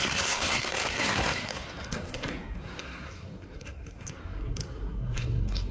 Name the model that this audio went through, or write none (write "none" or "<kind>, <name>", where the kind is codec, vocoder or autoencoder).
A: codec, SNAC